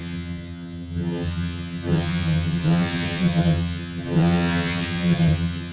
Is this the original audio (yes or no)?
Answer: no